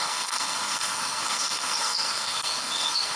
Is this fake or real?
fake